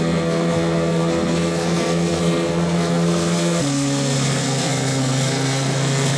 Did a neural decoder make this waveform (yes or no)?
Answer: yes